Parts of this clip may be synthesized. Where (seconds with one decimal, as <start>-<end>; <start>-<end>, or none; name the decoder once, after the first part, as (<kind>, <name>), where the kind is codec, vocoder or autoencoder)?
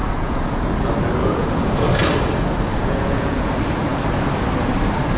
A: 0.0-0.7 (vocoder, Vocos); 1.2-2.0; 2.7-3.5